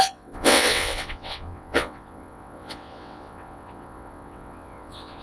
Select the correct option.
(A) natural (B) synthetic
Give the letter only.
B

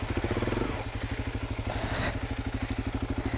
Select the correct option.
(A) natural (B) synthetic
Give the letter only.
A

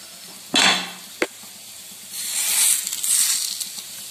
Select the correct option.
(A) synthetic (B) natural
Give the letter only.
B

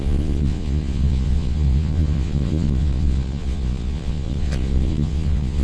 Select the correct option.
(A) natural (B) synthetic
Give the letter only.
B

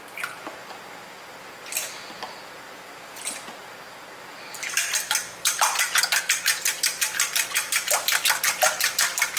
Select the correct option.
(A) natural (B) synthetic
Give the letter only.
A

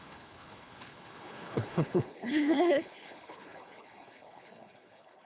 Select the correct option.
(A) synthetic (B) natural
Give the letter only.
A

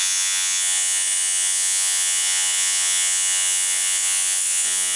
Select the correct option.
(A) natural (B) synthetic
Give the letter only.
B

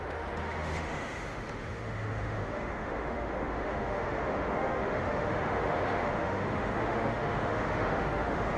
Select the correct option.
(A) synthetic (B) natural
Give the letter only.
A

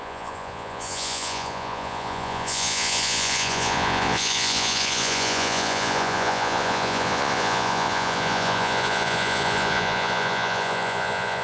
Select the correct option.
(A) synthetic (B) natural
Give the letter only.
A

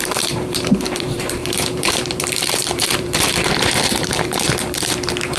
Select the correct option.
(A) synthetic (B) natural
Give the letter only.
A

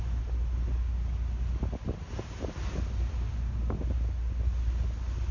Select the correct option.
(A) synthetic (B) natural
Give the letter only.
B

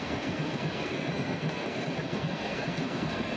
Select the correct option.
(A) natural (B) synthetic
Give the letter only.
B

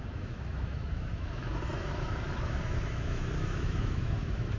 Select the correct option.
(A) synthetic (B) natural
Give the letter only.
A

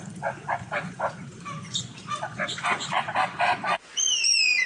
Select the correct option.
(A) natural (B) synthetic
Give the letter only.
B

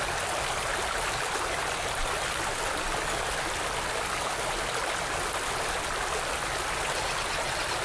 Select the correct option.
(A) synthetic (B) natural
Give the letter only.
B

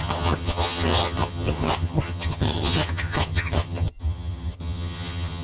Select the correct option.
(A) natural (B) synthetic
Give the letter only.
B